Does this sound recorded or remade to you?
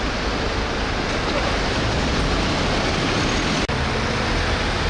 recorded